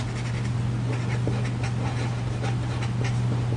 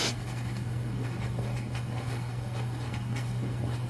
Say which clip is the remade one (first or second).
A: second